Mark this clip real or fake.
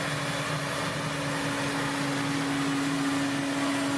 real